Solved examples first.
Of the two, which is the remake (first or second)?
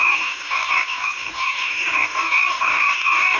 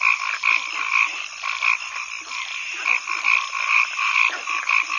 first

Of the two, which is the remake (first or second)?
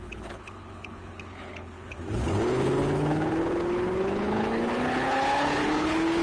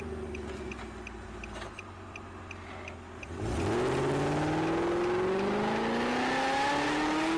first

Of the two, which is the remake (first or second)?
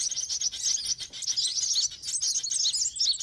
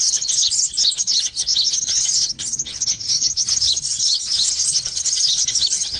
second